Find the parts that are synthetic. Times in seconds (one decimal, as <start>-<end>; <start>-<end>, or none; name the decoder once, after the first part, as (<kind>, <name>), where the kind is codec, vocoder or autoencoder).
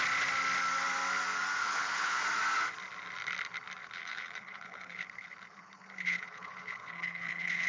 1.6-2.2 (codec, HILCodec); 3.8-7.7